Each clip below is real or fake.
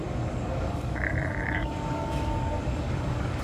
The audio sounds fake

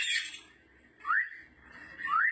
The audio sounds real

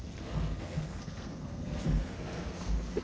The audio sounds fake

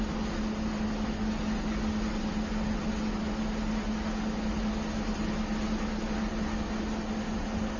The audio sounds real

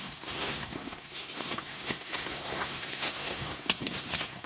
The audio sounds fake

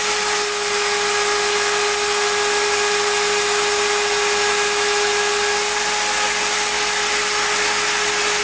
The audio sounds real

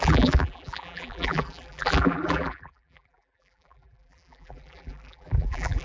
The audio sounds fake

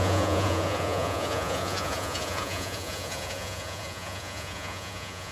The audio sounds fake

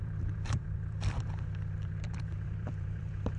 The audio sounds fake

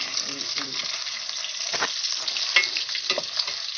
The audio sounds real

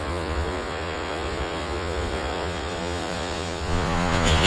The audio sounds fake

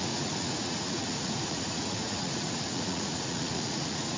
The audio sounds fake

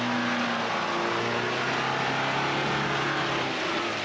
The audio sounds real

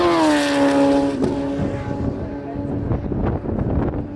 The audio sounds real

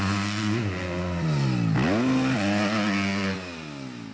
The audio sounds real